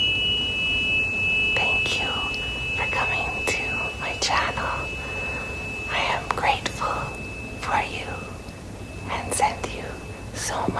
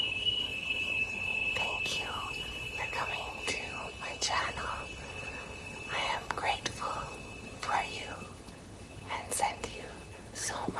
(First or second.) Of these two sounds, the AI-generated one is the second